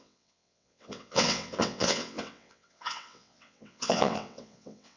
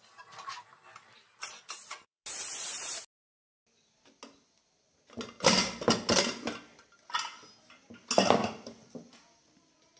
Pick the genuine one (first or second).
second